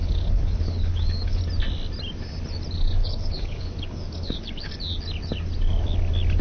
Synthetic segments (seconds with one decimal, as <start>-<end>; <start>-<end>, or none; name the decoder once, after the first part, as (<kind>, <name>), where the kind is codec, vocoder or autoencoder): 0.0-1.4 (codec, HILCodec); 3.0-4.7